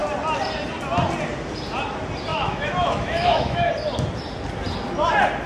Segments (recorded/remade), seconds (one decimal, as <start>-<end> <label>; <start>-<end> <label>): 0.0-2.3 recorded; 2.3-3.7 remade; 3.7-5.5 recorded